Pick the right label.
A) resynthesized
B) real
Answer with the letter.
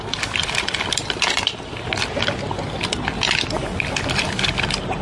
B